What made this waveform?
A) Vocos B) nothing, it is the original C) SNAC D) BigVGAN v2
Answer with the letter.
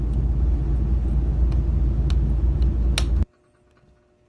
B